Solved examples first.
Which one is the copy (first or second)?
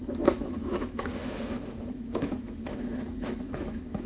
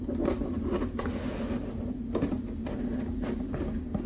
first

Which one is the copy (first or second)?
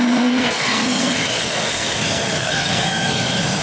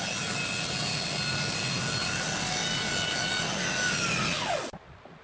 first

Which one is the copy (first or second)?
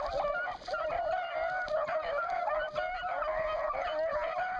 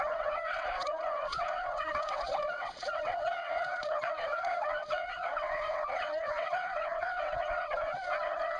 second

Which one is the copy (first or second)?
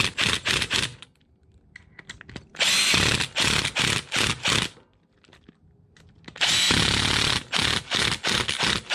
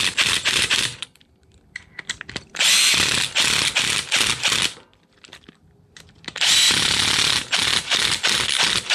second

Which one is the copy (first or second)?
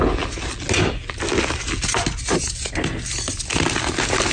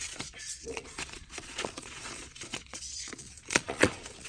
second